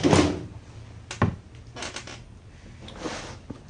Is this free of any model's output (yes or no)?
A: yes